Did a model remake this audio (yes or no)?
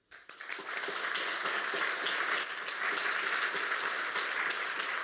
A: no